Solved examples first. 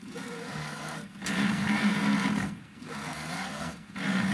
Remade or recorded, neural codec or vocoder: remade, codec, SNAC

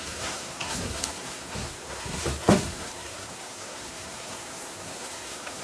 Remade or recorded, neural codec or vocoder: remade, codec, SNAC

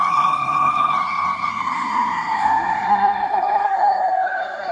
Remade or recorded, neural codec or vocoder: remade, codec, SNAC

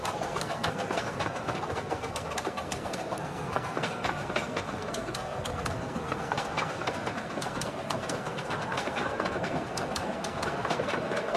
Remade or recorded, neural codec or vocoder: remade, codec, SNAC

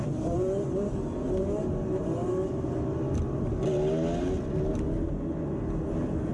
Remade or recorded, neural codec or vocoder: recorded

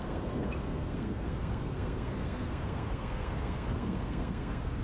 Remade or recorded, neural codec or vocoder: remade, codec, SNAC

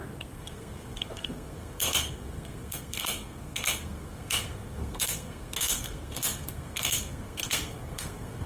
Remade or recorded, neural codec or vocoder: remade, codec, SNAC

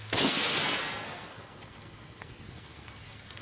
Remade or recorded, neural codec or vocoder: remade, codec, SNAC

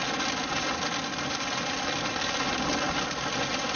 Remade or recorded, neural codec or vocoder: recorded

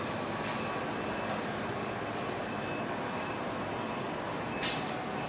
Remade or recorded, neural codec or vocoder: recorded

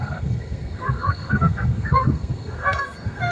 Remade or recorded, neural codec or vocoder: remade, codec, SNAC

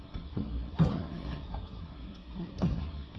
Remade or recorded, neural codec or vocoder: remade, codec, SNAC